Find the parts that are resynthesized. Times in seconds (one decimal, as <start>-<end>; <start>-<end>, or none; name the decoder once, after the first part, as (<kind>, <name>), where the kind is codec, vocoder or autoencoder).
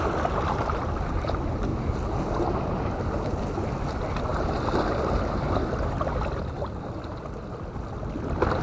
none